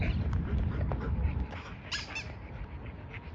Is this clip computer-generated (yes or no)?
no